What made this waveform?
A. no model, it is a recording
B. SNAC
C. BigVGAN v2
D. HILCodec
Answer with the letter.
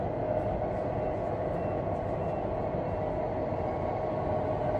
A